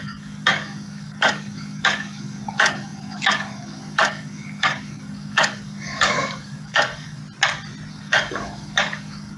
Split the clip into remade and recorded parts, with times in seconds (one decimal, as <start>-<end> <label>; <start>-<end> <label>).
0.0-7.2 remade; 7.2-7.9 recorded; 7.9-9.4 remade